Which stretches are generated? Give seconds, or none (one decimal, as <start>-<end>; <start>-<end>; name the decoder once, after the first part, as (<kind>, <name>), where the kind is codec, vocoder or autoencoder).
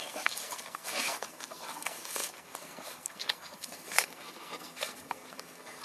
0.0-5.8 (codec, SNAC)